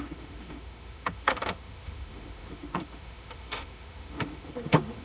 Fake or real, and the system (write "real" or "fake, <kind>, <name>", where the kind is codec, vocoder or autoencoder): fake, autoencoder, DAC-VAE